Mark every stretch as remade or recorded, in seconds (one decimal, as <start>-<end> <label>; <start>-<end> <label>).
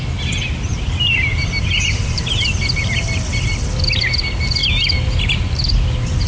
0.0-0.7 recorded; 0.7-2.2 remade; 2.2-6.3 recorded